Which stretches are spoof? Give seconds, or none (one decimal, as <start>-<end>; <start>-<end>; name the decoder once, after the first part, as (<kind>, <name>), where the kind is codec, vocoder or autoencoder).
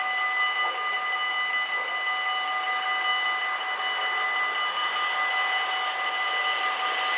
none